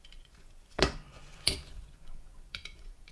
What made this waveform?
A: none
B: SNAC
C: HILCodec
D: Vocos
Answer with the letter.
D